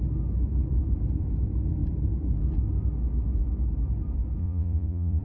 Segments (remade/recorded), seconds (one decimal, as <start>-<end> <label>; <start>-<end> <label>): 0.0-4.4 recorded; 4.4-5.2 remade